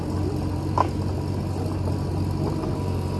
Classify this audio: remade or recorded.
recorded